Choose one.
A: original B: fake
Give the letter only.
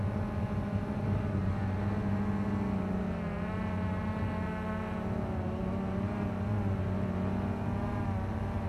A